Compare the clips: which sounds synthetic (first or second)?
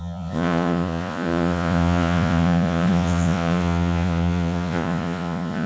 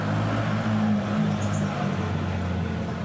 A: first